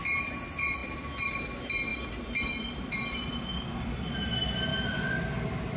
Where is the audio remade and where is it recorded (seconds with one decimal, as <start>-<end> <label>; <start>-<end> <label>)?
0.0-0.8 recorded; 0.8-1.4 remade; 1.4-1.9 recorded; 1.9-4.3 remade; 4.3-4.7 recorded; 4.7-5.2 remade; 5.2-5.8 recorded